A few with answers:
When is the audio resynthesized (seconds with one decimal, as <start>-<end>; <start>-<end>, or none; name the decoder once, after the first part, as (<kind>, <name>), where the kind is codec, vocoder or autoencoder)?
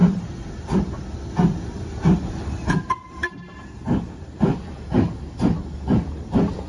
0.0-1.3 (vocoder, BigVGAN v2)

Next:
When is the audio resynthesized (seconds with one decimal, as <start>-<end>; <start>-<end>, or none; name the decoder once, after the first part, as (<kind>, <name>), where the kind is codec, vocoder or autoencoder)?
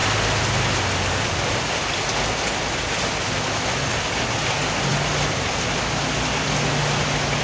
none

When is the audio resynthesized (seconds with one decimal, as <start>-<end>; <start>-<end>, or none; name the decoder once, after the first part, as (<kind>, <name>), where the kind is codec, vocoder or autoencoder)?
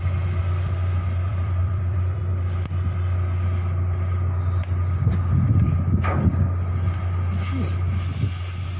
1.3-2.3 (vocoder, BigVGAN v2)